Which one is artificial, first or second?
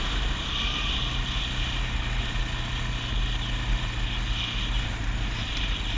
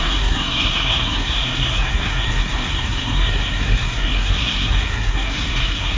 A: second